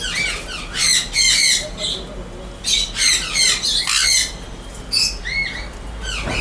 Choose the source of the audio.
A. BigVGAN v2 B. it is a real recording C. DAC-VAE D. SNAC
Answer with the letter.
B